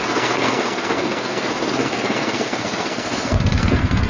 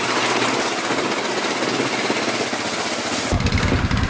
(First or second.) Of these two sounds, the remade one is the first